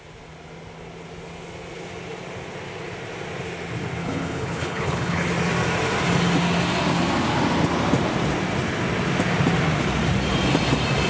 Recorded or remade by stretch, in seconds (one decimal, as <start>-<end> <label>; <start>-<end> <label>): 0.0-4.0 recorded; 4.0-5.3 remade; 5.3-11.1 recorded